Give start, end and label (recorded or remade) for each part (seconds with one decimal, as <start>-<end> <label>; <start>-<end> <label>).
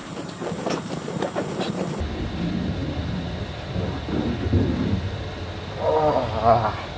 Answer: 0.0-1.7 remade; 1.7-7.0 recorded